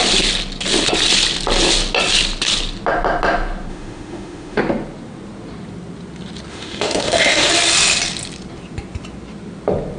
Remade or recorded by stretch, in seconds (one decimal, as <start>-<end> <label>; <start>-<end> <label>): 0.0-3.7 recorded; 3.7-4.6 remade; 4.6-6.5 recorded; 6.5-7.5 remade; 7.5-10.0 recorded